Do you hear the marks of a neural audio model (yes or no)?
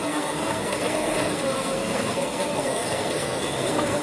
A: yes